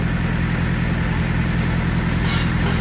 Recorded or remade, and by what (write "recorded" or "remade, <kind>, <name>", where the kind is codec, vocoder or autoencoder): recorded